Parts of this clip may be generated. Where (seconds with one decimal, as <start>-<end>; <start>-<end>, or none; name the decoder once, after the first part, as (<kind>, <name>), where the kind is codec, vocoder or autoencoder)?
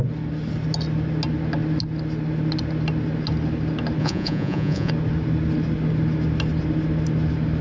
4.0-4.9 (vocoder, Vocos)